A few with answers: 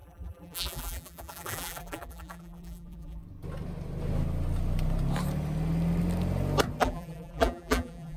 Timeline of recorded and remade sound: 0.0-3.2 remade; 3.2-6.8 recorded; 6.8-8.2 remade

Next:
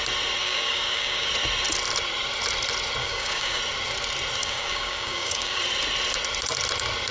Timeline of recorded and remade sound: 0.0-0.4 recorded; 0.4-1.3 remade; 1.3-3.0 recorded; 3.0-3.6 remade; 3.6-4.4 recorded; 4.4-5.6 remade; 5.6-7.1 recorded

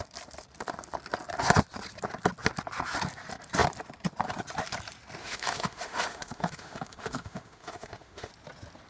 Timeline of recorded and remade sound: 0.0-5.2 recorded; 5.2-8.3 remade; 8.3-8.9 recorded

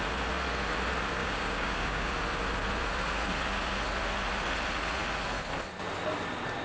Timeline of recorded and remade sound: 0.0-1.2 recorded; 1.2-2.1 remade; 2.1-6.6 recorded